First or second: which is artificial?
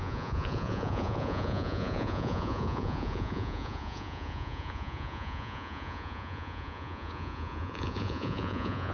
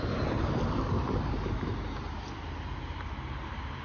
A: first